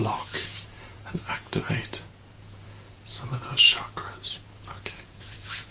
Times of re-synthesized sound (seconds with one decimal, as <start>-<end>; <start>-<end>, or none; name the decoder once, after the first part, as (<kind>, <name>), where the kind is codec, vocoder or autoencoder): 0.0-5.7 (vocoder, Vocos)